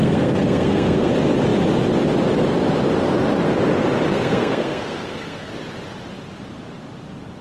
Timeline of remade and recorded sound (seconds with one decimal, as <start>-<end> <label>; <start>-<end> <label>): 0.0-1.1 remade; 1.1-4.1 recorded; 4.1-5.5 remade; 5.5-7.4 recorded